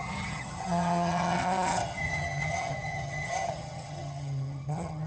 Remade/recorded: remade